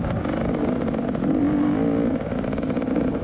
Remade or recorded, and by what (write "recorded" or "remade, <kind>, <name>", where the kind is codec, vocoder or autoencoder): recorded